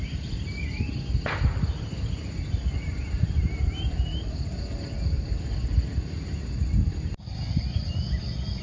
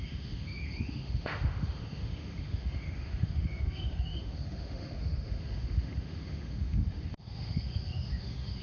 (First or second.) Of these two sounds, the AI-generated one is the second